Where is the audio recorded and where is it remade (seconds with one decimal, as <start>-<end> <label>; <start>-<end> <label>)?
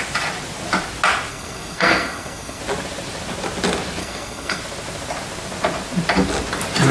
0.0-1.3 recorded; 1.3-2.6 remade; 2.6-4.0 recorded; 4.0-4.6 remade; 4.6-6.9 recorded